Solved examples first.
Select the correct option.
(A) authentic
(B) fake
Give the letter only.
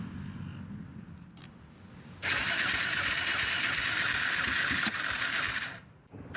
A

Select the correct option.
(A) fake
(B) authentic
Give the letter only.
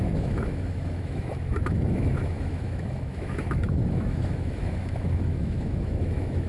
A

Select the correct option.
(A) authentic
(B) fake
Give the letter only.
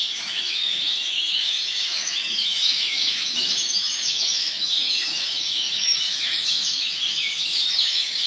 B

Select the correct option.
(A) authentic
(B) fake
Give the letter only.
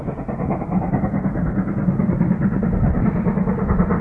A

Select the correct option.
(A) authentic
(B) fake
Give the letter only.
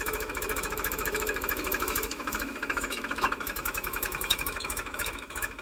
B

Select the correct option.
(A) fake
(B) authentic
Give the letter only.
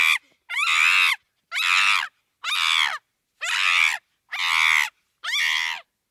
B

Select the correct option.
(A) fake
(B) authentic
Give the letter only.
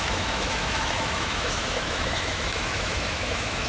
A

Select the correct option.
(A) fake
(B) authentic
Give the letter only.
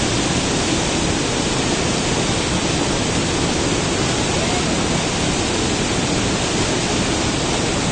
B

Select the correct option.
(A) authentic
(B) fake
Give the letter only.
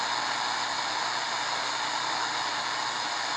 A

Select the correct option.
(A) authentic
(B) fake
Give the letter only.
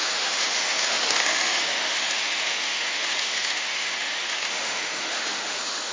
B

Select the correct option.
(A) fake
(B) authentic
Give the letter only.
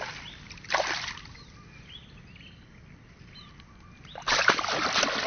B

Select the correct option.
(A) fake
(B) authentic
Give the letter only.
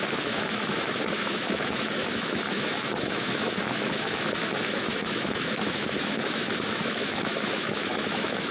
A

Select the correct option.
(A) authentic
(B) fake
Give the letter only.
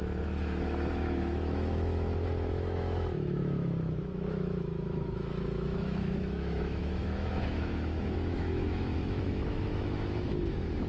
B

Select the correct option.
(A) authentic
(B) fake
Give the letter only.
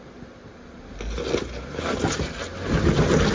A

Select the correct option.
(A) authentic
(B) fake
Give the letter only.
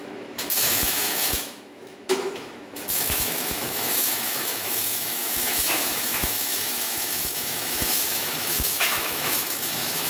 B